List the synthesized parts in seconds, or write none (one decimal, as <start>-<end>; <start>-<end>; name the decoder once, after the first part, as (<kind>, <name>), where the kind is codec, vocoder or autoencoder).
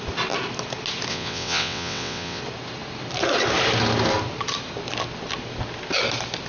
1.1-2.4 (vocoder, WaveNeXt)